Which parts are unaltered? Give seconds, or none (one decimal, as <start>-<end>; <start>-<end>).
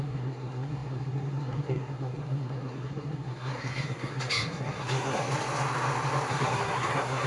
5.2-6.3